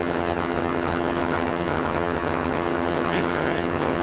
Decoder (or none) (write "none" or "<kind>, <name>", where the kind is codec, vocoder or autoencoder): vocoder, HiFi-GAN